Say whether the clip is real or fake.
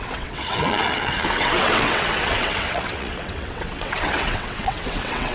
fake